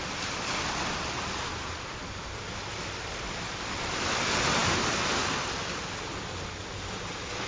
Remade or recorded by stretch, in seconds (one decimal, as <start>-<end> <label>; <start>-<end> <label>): 0.0-7.5 recorded